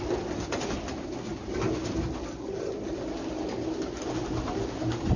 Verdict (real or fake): real